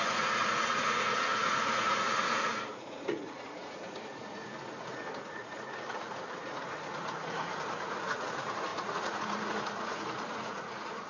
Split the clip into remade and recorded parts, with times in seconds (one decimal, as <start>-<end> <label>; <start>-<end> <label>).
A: 0.0-11.1 remade